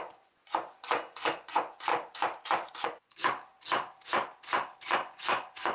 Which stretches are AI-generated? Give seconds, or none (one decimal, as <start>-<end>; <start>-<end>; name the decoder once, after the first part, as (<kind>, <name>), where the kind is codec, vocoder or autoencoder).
0.0-1.9 (vocoder, Vocos); 2.8-3.2; 4.9-5.7